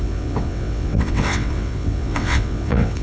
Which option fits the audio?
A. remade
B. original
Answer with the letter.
A